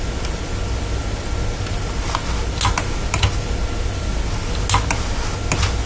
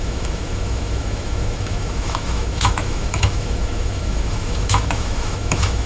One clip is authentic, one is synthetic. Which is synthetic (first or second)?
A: second